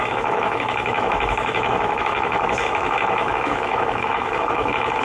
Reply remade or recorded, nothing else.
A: remade